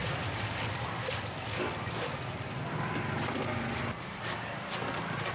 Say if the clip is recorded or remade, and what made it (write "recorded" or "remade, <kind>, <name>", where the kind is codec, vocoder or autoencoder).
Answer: recorded